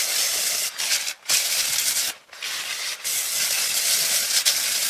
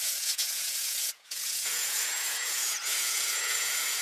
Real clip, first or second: first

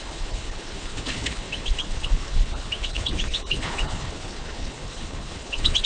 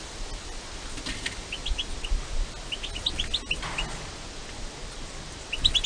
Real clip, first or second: second